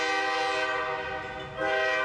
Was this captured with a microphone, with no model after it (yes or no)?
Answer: yes